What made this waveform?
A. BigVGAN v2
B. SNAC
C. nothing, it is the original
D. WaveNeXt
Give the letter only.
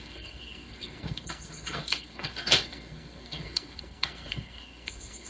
B